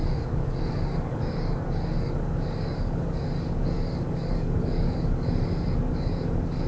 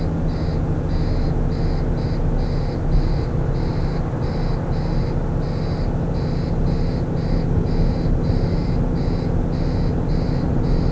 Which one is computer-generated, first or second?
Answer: first